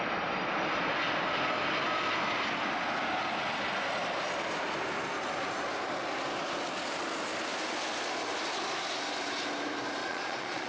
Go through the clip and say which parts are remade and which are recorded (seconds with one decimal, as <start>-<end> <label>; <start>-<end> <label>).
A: 0.0-10.0 recorded; 10.0-10.7 remade